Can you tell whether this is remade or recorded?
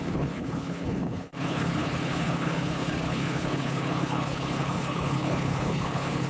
remade